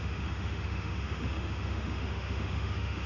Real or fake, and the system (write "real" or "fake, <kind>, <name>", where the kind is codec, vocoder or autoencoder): fake, autoencoder, DAC-VAE